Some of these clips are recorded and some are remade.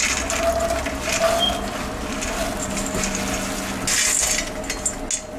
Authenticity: recorded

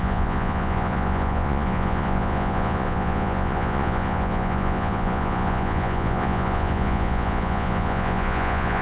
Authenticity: remade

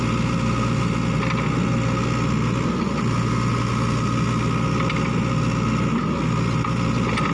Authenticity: recorded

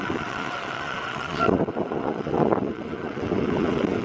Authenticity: remade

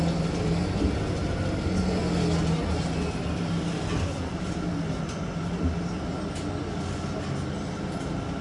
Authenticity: recorded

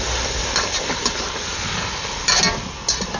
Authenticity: recorded